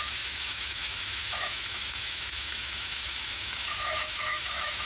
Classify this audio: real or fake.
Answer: fake